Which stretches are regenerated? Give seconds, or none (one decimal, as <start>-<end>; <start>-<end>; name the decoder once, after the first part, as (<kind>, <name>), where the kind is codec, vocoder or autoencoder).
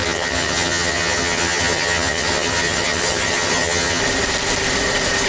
0.0-4.0 (vocoder, HiFi-GAN)